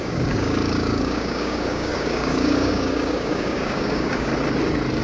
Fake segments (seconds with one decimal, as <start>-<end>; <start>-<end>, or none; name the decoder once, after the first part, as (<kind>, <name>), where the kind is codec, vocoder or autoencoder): 0.0-4.3 (codec, DAC)